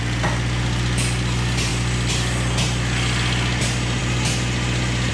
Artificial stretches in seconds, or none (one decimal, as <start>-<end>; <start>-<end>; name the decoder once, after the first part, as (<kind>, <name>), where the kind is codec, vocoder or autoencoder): none